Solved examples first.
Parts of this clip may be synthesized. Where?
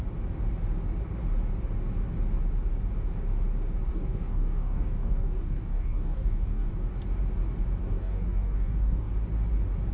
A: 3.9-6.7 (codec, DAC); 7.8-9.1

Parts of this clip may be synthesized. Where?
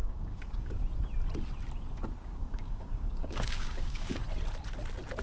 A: 0.0-0.8 (codec, DAC); 2.2-4.2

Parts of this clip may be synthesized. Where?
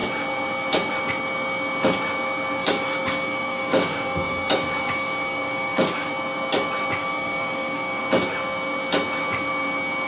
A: 2.6-6.1 (codec, DAC); 7.0-8.0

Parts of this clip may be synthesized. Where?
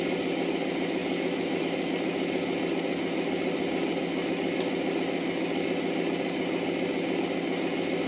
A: none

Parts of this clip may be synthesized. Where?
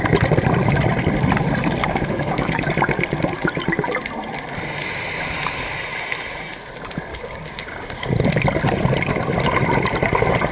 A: 1.8-2.7 (codec, DAC); 7.1-8.1